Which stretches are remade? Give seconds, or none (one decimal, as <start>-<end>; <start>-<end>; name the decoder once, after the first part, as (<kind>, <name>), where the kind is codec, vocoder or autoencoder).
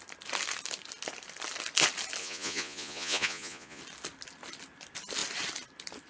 2.2-3.8 (vocoder, Vocos)